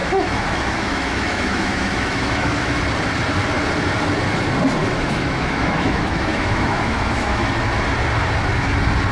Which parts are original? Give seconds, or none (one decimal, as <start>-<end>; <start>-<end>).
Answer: 2.8-4.8; 7.5-9.1